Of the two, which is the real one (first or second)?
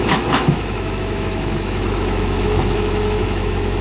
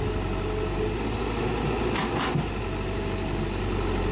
second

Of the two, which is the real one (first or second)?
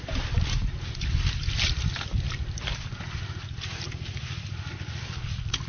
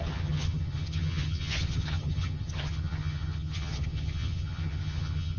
first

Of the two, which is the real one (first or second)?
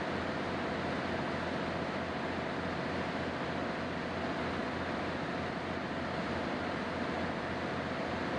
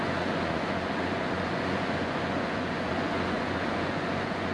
first